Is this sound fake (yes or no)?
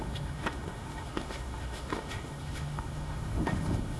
yes